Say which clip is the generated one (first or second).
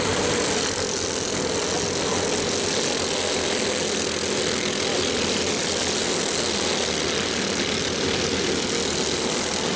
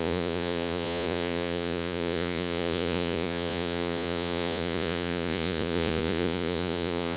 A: second